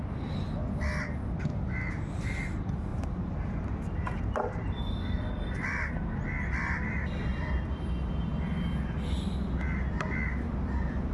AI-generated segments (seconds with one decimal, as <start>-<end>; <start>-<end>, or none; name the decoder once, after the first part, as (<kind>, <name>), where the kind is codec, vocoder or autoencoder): 2.9-5.3 (vocoder, BigVGAN v2)